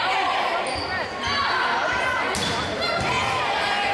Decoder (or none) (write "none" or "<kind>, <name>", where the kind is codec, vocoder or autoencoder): none